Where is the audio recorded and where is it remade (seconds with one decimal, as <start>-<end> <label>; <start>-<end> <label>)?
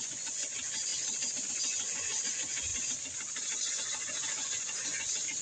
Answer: 0.0-0.9 remade; 0.9-1.5 recorded; 1.5-2.7 remade; 2.7-3.7 recorded; 3.7-5.4 remade